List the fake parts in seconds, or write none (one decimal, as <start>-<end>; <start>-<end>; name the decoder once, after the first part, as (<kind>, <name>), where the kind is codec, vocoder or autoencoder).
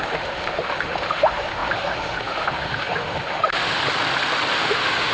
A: 0.0-3.8 (autoencoder, DAC-VAE); 4.5-5.1